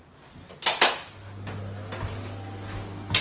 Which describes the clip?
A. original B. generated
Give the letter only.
A